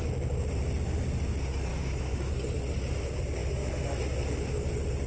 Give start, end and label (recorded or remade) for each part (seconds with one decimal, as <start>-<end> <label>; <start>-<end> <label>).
0.0-1.7 recorded; 1.7-2.3 remade; 2.3-3.4 recorded; 3.4-4.1 remade; 4.1-5.1 recorded